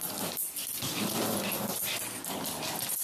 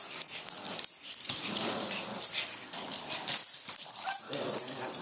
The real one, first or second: first